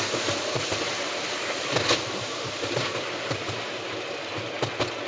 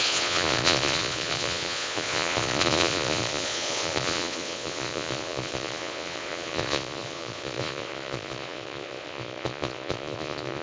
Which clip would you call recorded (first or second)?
first